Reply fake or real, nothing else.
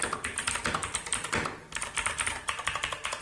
fake